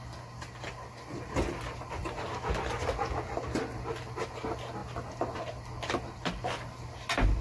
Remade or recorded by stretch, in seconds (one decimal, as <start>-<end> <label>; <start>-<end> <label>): 0.0-7.4 recorded